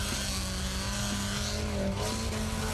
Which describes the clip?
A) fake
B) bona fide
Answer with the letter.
B